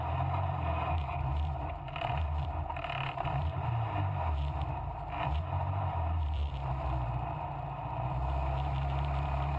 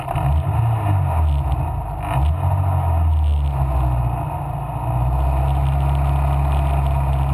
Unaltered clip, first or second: second